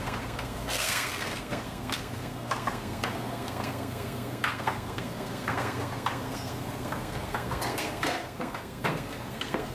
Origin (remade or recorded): remade